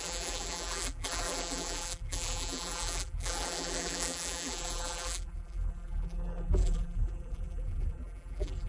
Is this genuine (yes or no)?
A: no